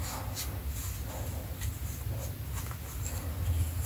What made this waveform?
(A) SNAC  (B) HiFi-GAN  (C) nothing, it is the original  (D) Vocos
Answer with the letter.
C